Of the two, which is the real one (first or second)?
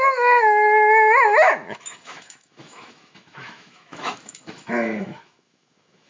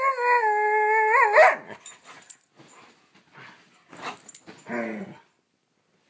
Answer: second